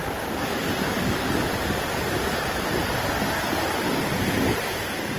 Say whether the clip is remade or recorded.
remade